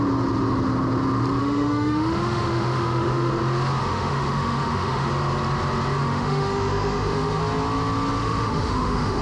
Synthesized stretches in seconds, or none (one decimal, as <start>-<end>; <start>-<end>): 1.4-3.3; 3.8-5.1; 6.0-7.4; 8.2-9.2

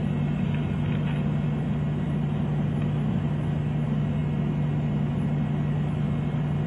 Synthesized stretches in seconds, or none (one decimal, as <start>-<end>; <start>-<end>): none

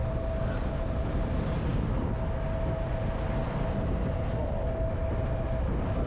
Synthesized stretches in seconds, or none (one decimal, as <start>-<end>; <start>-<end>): none

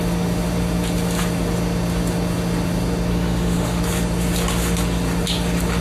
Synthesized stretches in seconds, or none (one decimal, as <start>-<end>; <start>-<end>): 3.1-3.8